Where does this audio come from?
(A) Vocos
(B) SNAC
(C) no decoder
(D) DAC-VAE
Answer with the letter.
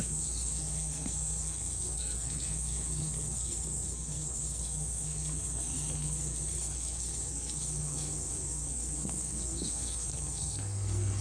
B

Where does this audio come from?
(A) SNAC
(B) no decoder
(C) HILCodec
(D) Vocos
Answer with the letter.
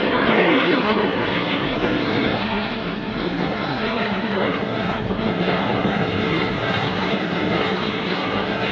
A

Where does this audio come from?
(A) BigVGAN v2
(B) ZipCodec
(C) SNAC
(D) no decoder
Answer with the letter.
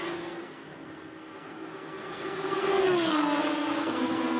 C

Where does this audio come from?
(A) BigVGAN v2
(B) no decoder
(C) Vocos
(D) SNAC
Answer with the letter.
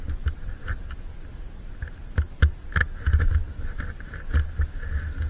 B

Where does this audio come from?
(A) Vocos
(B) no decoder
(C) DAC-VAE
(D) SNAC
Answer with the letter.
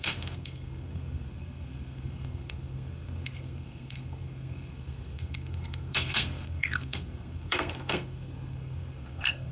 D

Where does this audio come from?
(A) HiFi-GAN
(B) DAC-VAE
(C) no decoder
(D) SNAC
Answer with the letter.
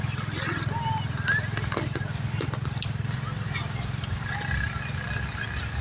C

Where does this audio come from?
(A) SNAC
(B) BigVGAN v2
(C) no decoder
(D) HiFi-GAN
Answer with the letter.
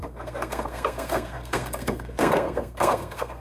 A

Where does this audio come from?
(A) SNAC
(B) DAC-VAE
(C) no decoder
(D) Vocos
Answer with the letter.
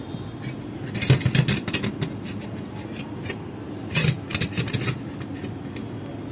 C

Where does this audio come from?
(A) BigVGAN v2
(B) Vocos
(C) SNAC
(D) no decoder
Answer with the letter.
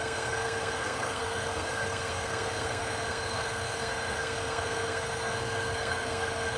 C